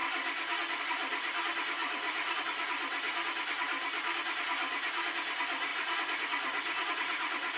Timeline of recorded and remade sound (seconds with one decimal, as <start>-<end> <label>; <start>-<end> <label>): 0.0-1.8 recorded; 1.8-2.4 remade; 2.4-5.7 recorded; 5.7-7.6 remade

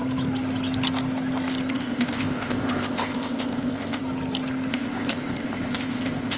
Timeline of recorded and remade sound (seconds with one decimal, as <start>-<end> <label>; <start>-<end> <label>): 0.0-1.7 recorded; 1.7-4.0 remade; 4.0-4.7 recorded; 4.7-6.4 remade